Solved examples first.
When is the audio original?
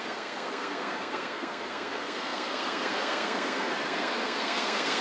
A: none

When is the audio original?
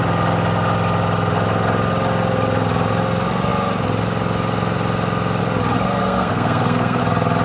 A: 0.0-6.0; 7.0-7.4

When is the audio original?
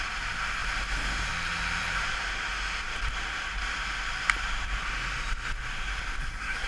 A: 0.0-6.2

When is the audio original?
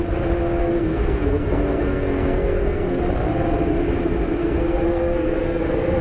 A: 0.0-0.6; 3.0-4.4; 5.6-6.0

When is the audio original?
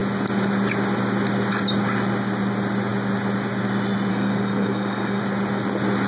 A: 0.0-4.1; 5.2-6.1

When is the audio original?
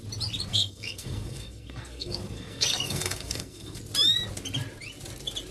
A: 0.0-0.5; 3.8-5.5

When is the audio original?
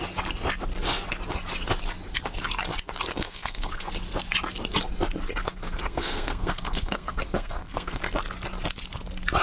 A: 0.0-3.1; 3.9-5.4; 8.0-9.4